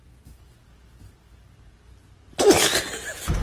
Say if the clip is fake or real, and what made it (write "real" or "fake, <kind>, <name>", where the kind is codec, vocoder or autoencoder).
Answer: real